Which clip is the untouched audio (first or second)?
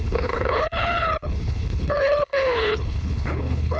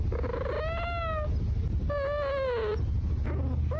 second